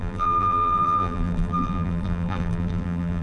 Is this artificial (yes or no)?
yes